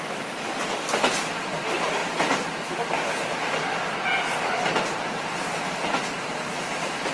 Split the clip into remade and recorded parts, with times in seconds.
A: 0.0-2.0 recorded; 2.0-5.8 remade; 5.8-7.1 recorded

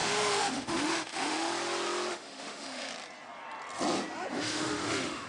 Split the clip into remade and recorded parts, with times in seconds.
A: 0.0-1.5 remade; 1.5-2.1 recorded; 2.1-2.9 remade; 2.9-4.3 recorded; 4.3-5.3 remade

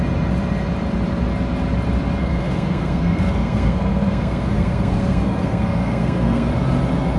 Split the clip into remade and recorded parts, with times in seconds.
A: 0.0-2.2 recorded; 2.2-6.5 remade; 6.5-7.2 recorded

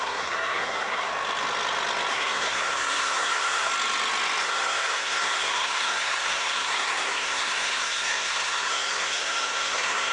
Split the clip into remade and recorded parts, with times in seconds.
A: 0.0-1.1 remade; 1.1-2.1 recorded; 2.1-3.7 remade; 3.7-4.4 recorded; 4.4-10.1 remade